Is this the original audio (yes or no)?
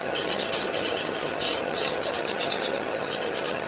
no